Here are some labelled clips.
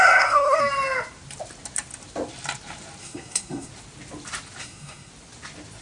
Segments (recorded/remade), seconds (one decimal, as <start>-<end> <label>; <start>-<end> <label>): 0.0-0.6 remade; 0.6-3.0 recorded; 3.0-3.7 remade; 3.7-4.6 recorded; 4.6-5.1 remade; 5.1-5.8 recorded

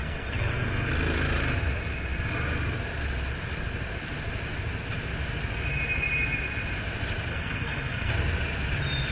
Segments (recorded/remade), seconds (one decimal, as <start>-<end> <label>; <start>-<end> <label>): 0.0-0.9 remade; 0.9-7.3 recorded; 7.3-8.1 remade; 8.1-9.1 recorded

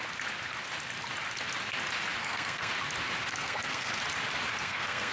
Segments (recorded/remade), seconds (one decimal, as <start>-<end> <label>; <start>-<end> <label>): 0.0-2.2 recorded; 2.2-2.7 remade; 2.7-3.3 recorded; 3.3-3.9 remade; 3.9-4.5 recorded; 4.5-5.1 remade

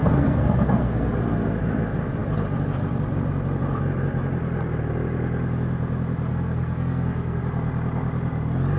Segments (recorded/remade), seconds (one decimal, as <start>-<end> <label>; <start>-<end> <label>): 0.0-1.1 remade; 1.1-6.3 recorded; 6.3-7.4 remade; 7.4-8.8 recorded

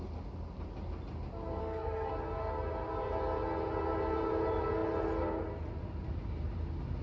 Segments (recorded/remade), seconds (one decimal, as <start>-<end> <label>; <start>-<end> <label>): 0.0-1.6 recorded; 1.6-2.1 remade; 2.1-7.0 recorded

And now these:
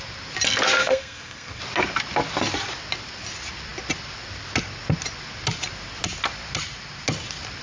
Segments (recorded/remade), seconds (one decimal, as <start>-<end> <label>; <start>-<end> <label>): 0.0-0.8 recorded; 0.8-1.6 remade; 1.6-7.6 recorded

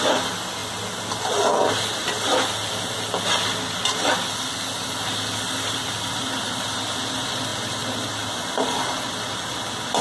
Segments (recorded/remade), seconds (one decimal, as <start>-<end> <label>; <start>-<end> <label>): 0.0-10.0 recorded